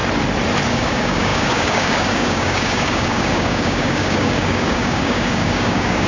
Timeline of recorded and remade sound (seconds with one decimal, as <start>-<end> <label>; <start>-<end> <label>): 0.0-0.7 recorded; 0.7-6.1 remade